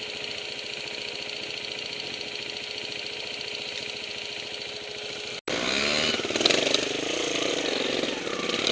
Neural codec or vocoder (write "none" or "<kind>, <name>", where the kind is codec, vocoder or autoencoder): none